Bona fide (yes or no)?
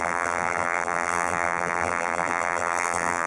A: no